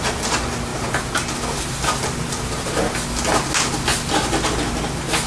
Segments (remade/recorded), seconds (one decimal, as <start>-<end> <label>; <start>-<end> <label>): 0.0-5.3 recorded